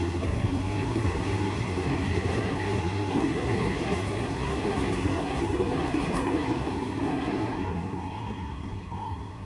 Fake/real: fake